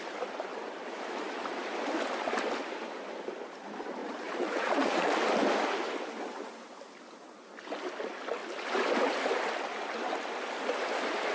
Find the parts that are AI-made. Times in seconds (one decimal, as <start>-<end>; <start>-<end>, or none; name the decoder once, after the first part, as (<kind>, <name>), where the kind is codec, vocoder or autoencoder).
4.0-5.1 (vocoder, Vocos)